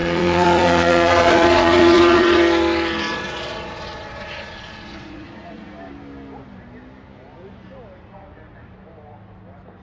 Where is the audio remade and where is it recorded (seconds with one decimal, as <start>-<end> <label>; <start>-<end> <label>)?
0.0-2.4 remade; 2.4-3.1 recorded; 3.1-5.7 remade; 5.7-9.8 recorded